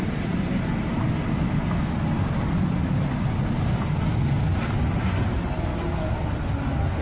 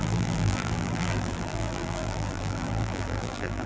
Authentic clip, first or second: first